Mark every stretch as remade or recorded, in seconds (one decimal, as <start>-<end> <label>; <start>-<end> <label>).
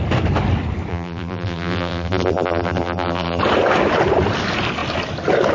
0.0-0.9 recorded; 0.9-3.4 remade; 3.4-5.5 recorded